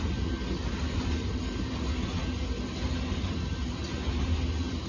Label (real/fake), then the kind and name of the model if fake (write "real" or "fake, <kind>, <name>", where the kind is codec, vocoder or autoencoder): real